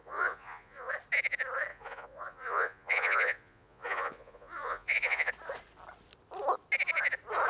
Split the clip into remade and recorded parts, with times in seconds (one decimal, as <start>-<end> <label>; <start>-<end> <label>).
0.0-0.9 remade; 0.9-1.7 recorded; 1.7-5.3 remade; 5.3-7.5 recorded